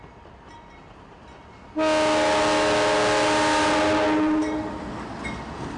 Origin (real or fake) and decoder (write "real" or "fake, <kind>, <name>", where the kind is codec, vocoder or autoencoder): real